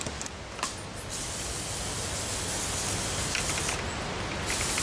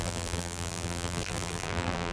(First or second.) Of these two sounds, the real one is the first